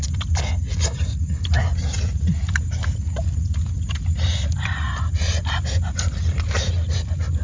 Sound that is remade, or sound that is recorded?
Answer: recorded